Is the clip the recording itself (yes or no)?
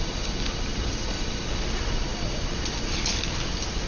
yes